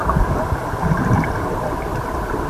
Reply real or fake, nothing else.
real